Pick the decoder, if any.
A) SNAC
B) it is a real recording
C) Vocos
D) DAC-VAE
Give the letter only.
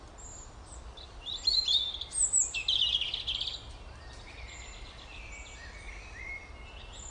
B